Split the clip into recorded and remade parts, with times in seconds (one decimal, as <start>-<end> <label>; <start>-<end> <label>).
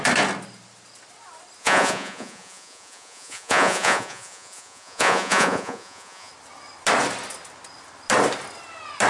0.0-1.6 recorded; 1.6-6.3 remade; 6.3-9.1 recorded